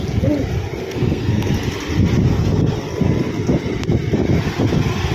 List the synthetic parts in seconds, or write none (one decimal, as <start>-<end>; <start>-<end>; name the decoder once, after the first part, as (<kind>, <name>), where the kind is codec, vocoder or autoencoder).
0.8-1.5 (codec, SNAC)